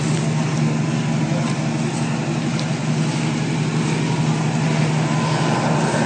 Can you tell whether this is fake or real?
real